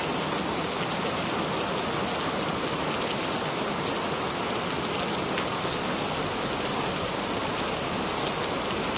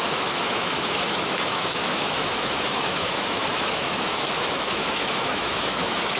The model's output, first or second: second